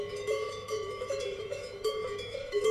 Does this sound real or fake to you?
fake